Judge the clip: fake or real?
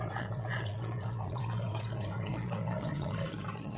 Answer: fake